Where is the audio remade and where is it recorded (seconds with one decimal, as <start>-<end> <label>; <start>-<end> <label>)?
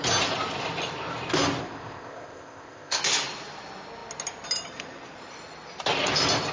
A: 0.0-1.6 recorded; 1.6-3.0 remade; 3.0-6.5 recorded